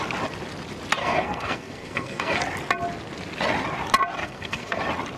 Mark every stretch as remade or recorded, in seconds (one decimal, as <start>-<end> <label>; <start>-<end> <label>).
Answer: 0.0-1.0 recorded; 1.0-2.4 remade; 2.4-4.2 recorded; 4.2-4.8 remade; 4.8-5.2 recorded